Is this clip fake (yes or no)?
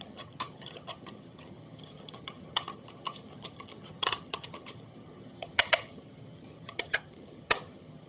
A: yes